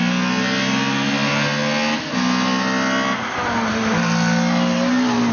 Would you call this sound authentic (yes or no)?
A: yes